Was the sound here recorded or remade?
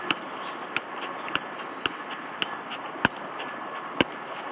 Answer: recorded